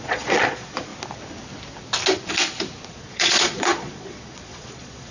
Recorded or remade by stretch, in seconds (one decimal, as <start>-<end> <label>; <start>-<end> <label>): 0.0-0.9 remade; 0.9-2.9 recorded; 2.9-5.1 remade